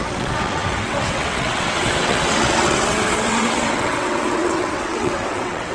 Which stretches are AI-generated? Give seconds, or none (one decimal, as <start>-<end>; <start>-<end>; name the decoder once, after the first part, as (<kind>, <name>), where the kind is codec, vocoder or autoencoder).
0.0-5.7 (vocoder, WaveNeXt)